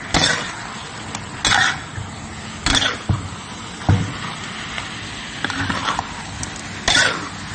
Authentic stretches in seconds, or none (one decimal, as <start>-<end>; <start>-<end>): 0.0-7.5